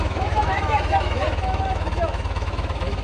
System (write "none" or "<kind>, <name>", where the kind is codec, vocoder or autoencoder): autoencoder, DAC-VAE